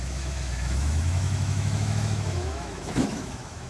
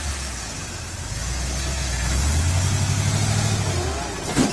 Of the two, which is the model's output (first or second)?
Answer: first